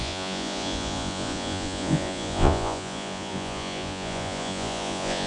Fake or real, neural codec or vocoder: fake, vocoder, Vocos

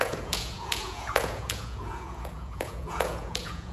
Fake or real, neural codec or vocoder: fake, vocoder, Vocos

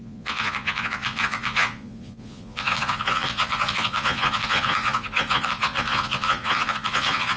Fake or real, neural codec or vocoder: fake, vocoder, Vocos